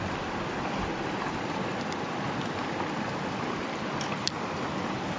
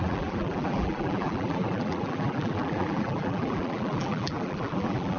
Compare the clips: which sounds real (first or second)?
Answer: first